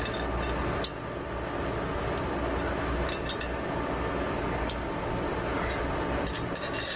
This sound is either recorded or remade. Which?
recorded